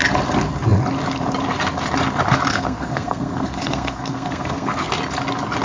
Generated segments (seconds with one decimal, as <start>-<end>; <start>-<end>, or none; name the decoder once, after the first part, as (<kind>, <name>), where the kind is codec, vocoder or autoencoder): 2.5-4.9 (codec, SNAC)